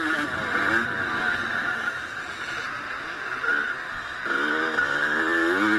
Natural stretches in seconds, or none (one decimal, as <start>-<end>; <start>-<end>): 0.0-1.6; 2.2-5.8